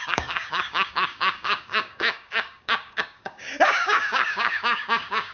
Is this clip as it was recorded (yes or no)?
no